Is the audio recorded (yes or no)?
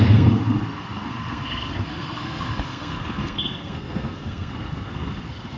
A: no